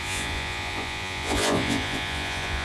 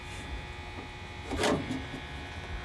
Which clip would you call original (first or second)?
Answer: second